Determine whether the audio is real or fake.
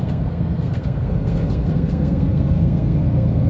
fake